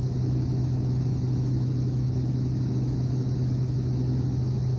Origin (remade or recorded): remade